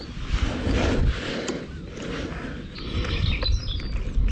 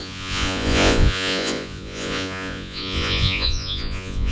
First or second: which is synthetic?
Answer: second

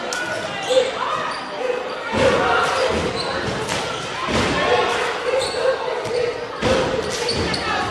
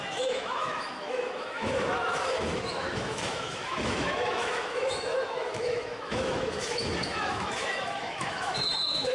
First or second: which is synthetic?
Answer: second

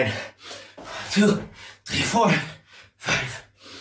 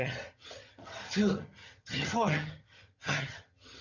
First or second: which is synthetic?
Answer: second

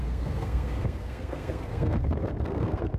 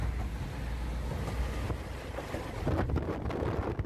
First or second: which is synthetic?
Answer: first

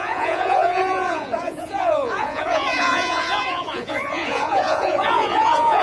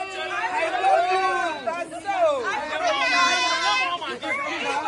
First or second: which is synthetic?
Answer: first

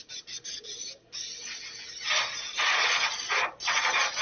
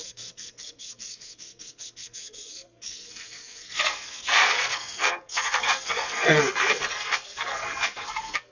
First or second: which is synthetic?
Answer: second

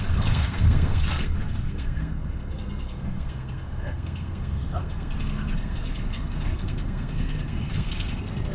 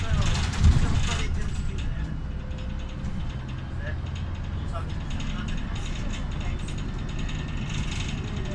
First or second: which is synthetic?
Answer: first